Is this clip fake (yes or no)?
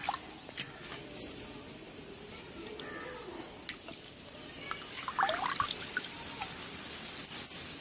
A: no